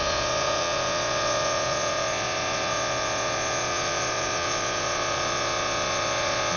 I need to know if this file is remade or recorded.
remade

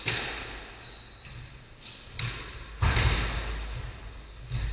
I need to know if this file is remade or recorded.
recorded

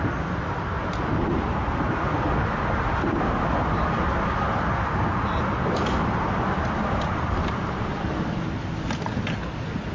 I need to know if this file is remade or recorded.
recorded